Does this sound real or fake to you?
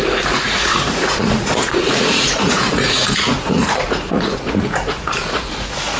fake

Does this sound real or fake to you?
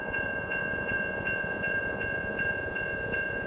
fake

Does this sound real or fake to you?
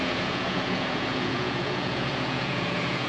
fake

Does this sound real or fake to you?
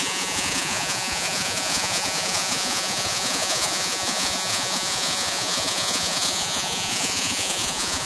fake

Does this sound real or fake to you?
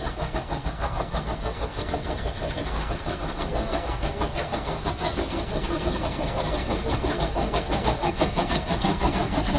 fake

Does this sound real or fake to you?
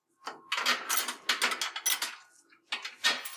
real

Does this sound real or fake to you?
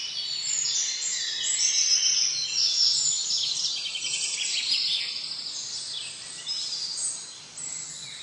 real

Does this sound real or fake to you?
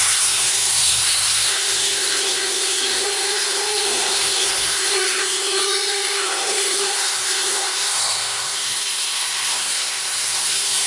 fake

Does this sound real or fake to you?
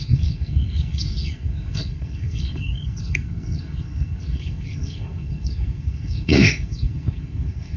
fake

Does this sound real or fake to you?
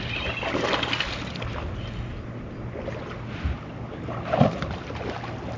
real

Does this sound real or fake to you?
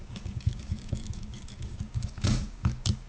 fake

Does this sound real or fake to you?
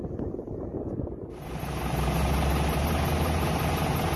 real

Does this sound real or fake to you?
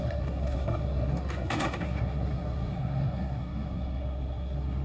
fake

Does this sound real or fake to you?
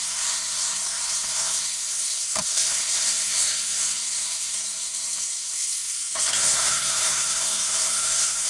fake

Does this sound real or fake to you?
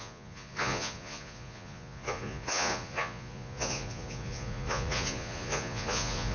fake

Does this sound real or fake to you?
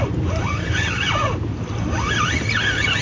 real